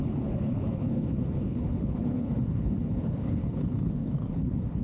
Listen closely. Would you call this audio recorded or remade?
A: remade